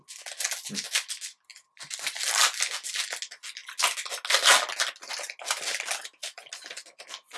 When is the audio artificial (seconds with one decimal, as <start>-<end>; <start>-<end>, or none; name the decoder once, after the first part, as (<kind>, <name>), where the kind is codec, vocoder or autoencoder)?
3.6-4.1 (vocoder, BigVGAN v2); 5.7-6.5